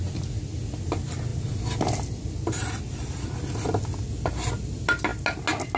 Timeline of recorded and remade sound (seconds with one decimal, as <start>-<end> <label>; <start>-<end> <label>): 0.0-5.8 recorded